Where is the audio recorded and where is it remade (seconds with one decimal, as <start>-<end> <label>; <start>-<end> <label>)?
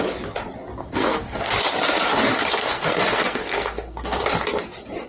0.0-0.8 recorded; 0.8-1.5 remade; 1.5-2.6 recorded; 2.6-4.2 remade; 4.2-5.1 recorded